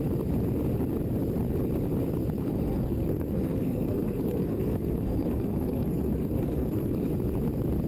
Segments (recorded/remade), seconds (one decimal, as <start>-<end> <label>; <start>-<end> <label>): 0.0-2.4 recorded; 2.4-7.1 remade; 7.1-7.9 recorded